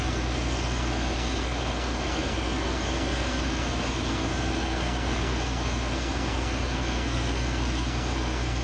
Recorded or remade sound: remade